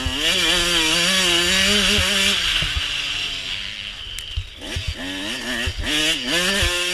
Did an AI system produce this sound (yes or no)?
no